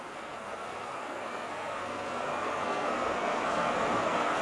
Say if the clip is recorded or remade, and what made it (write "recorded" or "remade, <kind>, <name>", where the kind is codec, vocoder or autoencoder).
remade, codec, SNAC